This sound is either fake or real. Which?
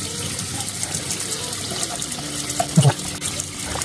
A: real